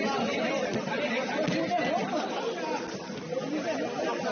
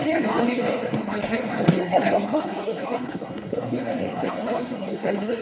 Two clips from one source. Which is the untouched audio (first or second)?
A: first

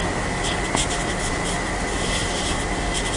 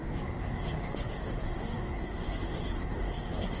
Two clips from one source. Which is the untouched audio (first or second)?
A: first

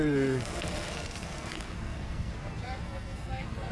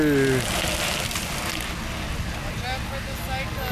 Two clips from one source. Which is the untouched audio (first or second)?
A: second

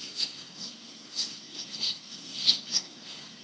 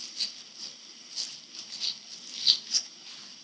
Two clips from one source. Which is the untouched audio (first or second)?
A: second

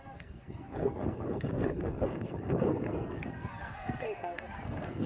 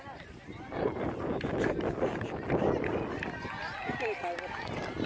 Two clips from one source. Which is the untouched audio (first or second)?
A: second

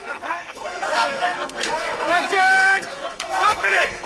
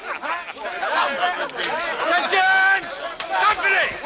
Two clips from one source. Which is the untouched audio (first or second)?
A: second